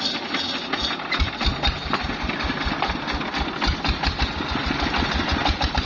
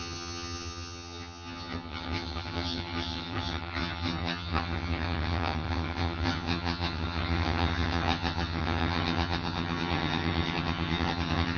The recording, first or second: first